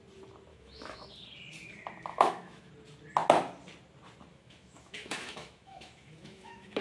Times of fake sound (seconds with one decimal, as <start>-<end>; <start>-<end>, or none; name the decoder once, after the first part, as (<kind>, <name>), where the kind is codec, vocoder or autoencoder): 0.5-1.1 (autoencoder, DAC-VAE); 2.1-2.7; 4.3-6.8